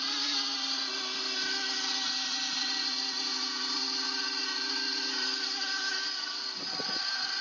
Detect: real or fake real